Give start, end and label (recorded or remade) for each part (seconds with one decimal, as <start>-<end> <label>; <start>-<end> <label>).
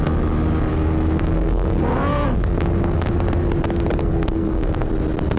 0.0-0.7 recorded; 0.7-3.1 remade; 3.1-4.0 recorded; 4.0-4.9 remade; 4.9-5.4 recorded